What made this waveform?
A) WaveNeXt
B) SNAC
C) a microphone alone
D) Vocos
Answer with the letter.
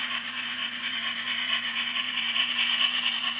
D